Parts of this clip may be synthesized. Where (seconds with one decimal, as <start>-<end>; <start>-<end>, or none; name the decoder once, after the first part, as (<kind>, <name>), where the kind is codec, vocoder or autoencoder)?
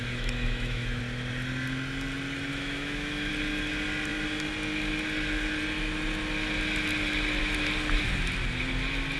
0.0-1.0 (autoencoder, DAC-VAE); 2.5-3.3